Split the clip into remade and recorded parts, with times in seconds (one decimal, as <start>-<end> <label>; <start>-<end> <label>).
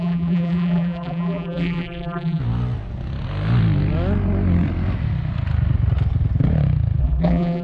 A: 0.0-2.4 remade; 2.4-7.0 recorded; 7.0-7.6 remade